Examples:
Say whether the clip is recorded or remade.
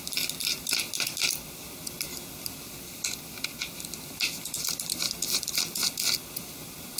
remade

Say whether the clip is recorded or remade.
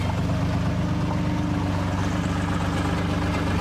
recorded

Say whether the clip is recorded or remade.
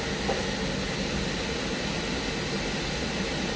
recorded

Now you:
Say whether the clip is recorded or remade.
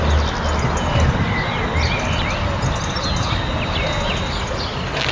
recorded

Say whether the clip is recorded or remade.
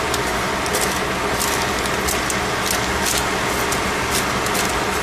recorded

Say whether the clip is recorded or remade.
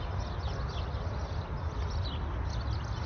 recorded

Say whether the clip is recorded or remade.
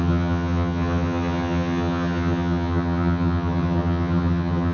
remade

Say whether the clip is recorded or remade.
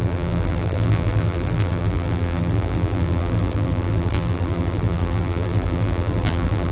remade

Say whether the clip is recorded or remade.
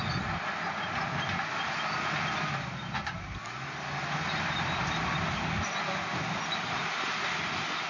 recorded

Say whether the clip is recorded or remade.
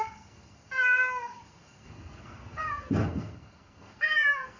remade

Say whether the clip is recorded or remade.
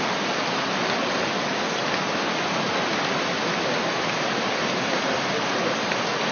recorded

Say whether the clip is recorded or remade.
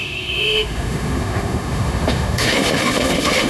remade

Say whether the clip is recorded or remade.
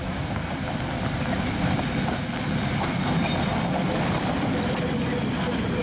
recorded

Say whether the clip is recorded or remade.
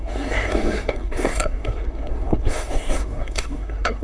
remade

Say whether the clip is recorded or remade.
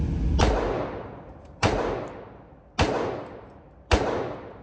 recorded